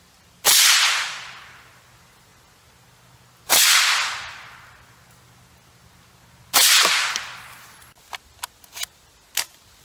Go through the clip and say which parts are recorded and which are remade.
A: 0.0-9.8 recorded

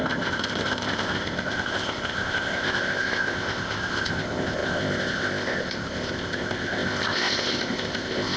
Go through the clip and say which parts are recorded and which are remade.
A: 0.0-8.4 remade

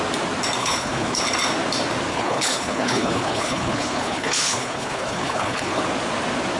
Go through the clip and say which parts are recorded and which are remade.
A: 0.0-0.6 recorded; 0.6-1.2 remade; 1.2-2.1 recorded; 2.1-5.8 remade; 5.8-6.6 recorded

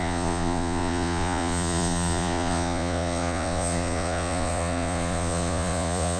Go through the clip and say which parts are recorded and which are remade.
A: 0.0-6.2 remade

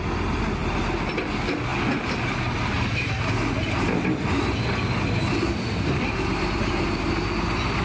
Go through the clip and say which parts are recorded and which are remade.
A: 0.0-7.8 recorded

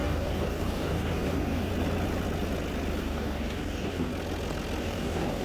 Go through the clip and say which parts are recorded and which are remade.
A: 0.0-1.7 remade; 1.7-3.0 recorded; 3.0-4.1 remade; 4.1-4.8 recorded; 4.8-5.4 remade

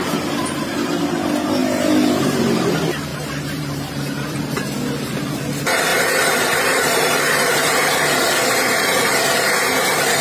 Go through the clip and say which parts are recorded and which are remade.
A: 0.0-3.1 recorded; 3.1-4.3 remade; 4.3-5.9 recorded; 5.9-7.9 remade; 7.9-10.2 recorded